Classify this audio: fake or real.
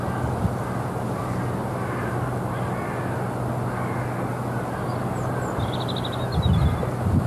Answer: real